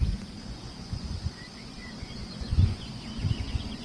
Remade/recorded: remade